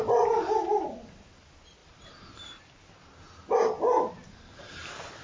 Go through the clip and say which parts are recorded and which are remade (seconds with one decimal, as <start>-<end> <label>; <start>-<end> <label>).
0.0-5.2 recorded